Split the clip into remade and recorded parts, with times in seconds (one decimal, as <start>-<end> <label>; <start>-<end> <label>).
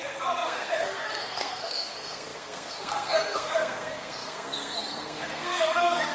0.0-6.1 remade